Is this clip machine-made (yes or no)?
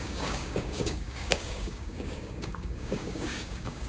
yes